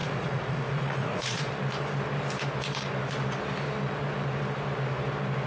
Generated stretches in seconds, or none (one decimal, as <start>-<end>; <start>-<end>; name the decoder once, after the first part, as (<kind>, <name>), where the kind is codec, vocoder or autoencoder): 0.0-1.5 (vocoder, Vocos)